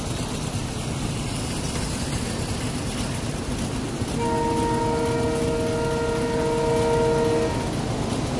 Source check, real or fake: real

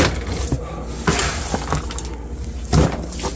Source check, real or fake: real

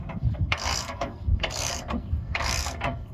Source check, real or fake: fake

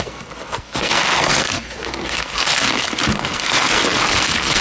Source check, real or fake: fake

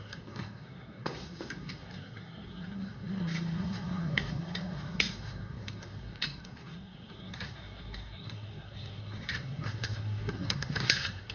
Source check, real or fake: fake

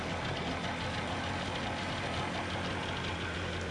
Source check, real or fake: real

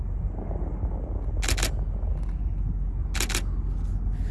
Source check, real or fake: real